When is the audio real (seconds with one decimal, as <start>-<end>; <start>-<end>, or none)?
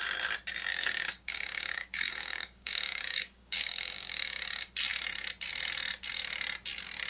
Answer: 0.0-0.7; 4.4-7.1